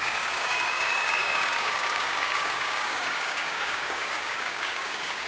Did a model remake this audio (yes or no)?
yes